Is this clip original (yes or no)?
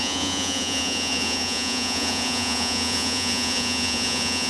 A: no